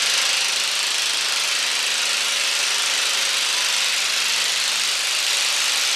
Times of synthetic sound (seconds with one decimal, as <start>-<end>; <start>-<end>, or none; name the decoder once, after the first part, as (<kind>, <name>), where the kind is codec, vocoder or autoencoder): none